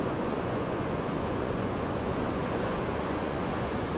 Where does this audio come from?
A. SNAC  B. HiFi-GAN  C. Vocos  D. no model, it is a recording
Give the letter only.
C